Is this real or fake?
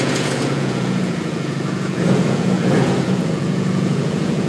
fake